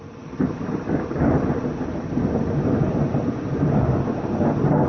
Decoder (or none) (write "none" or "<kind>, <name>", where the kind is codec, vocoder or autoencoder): none